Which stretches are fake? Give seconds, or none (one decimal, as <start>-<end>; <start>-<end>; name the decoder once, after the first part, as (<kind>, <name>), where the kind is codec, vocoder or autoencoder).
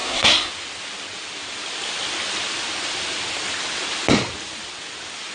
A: 0.0-0.5 (codec, SNAC)